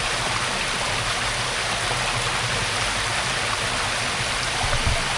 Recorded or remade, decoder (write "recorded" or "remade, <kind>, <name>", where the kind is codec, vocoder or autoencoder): recorded